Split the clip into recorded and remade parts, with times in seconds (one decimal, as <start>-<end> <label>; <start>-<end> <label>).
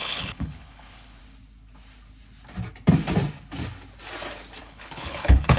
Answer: 0.0-1.2 remade; 1.2-4.6 recorded; 4.6-5.6 remade